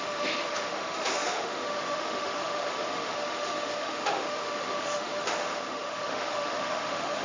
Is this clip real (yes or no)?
no